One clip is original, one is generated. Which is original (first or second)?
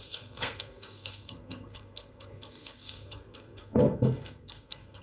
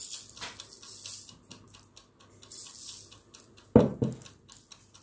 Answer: second